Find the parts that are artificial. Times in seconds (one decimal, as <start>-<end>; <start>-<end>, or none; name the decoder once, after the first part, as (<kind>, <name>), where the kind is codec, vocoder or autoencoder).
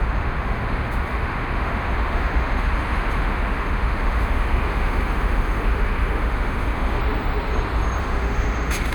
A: 0.0-7.0 (autoencoder, DAC-VAE); 8.0-8.9